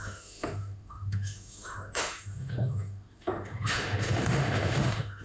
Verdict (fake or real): fake